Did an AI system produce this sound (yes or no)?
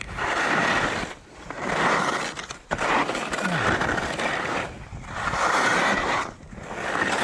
no